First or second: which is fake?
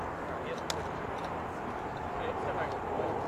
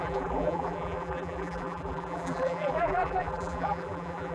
second